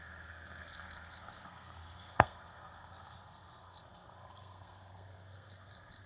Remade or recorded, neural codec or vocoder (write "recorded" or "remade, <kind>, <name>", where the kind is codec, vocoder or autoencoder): remade, codec, SNAC